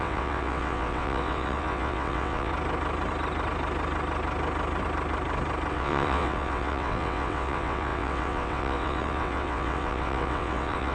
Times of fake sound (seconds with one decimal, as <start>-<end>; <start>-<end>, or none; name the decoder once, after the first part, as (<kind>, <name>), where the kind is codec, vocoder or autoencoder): 0.0-2.5 (vocoder, WaveNeXt); 5.7-10.9